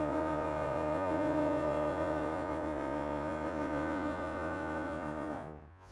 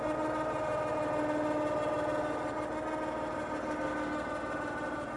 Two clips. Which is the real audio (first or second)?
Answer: second